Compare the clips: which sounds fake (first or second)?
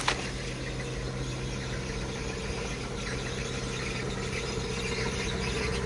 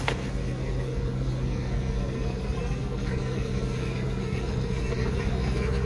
second